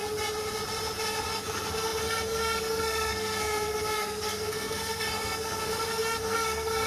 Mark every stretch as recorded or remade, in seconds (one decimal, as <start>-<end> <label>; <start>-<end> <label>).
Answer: 0.0-1.3 recorded; 1.3-6.9 remade